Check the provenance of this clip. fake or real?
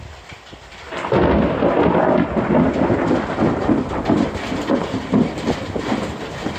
real